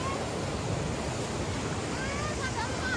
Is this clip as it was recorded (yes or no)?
yes